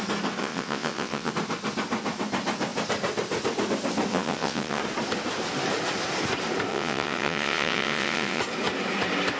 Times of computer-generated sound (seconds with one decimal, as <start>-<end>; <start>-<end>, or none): 0.4-1.3; 4.1-4.8; 6.7-8.4